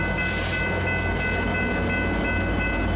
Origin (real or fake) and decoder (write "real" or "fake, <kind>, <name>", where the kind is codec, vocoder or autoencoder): real